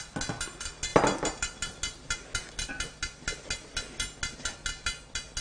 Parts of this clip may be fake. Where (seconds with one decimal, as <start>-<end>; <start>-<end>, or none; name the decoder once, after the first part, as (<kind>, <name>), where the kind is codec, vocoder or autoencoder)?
none